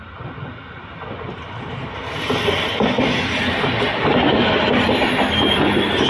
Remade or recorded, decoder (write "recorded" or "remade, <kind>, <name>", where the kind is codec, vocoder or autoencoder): recorded